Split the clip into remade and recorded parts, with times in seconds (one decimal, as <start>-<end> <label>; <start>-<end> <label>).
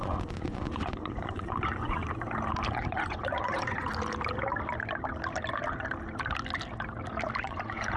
0.0-2.0 remade; 2.0-2.7 recorded; 2.7-3.9 remade; 3.9-7.4 recorded; 7.4-8.0 remade